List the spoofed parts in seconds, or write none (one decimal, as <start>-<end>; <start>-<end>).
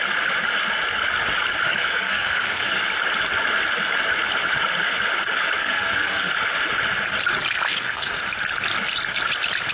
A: 1.7-2.8; 5.6-6.3; 7.7-8.2